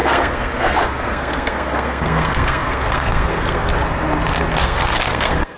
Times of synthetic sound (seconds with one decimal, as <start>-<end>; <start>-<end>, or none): 0.0-3.7; 4.6-5.6